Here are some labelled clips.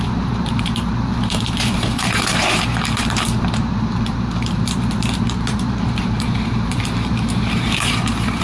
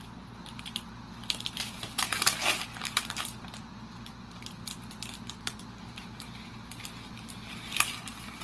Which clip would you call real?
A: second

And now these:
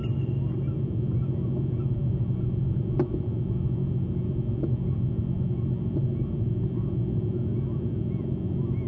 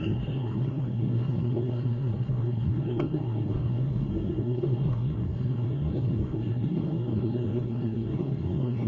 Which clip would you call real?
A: first